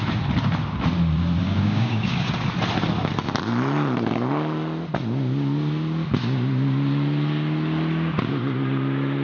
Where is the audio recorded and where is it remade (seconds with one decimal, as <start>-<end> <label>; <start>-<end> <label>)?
0.0-1.4 recorded; 1.4-2.3 remade; 2.3-9.2 recorded